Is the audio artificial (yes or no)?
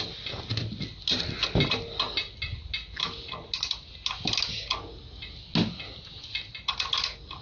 no